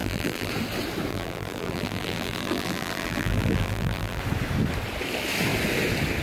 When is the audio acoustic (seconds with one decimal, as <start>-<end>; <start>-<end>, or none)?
0.5-1.1; 4.2-6.2